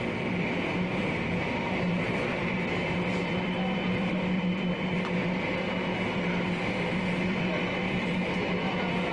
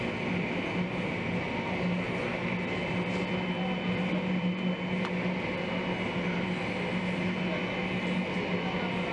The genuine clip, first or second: second